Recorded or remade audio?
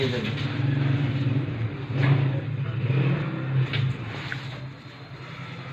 recorded